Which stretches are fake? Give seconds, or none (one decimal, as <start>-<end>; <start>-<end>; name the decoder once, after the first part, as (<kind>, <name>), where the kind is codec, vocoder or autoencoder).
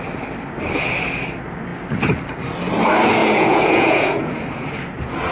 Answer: 3.2-4.3 (vocoder, Vocos)